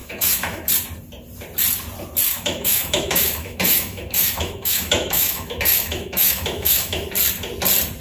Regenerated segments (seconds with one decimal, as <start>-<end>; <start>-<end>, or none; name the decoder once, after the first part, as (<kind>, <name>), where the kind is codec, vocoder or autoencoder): 0.0-0.7 (autoencoder, DAC-VAE); 2.3-7.1